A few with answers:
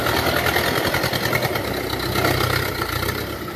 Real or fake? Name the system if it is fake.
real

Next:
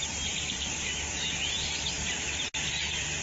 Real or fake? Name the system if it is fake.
real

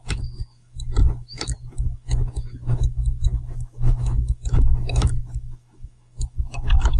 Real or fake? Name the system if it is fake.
fake, autoencoder, DAC-VAE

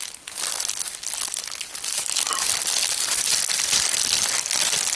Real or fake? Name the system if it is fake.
real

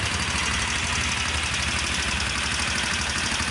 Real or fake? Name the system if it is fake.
real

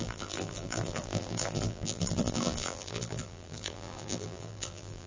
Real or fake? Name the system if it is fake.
fake, vocoder, BigVGAN v2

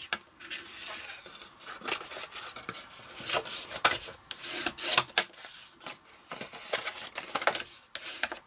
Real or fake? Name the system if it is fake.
real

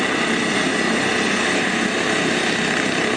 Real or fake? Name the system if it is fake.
real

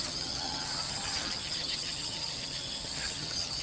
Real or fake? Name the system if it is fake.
fake, vocoder, HiFi-GAN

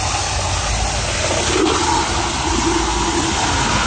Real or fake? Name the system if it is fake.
real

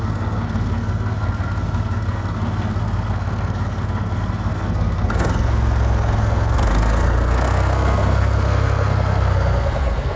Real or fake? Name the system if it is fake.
fake, codec, SNAC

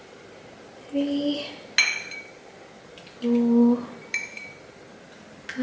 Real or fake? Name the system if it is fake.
real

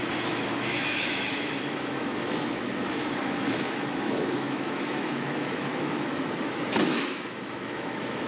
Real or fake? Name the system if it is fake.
fake, autoencoder, DAC-VAE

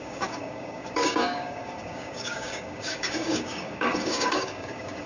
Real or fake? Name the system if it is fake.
fake, codec, DAC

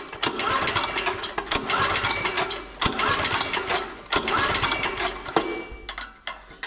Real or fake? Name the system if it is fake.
real